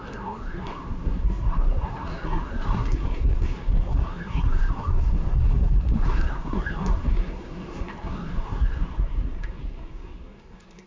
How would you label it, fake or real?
fake